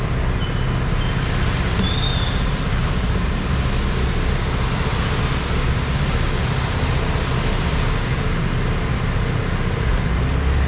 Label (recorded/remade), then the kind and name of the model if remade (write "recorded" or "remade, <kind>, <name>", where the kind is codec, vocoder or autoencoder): recorded